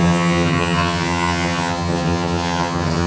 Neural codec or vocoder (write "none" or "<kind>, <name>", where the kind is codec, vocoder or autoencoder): vocoder, HiFi-GAN